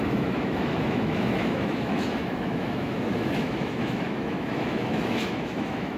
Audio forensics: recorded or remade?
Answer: remade